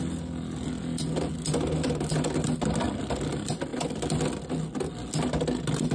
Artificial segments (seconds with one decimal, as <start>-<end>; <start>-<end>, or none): none